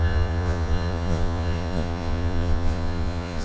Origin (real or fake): fake